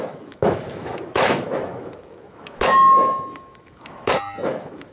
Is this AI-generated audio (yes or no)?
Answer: yes